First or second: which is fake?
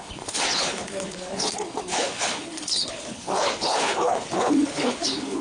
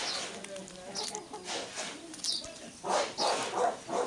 first